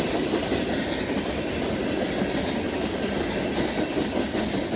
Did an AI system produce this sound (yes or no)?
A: no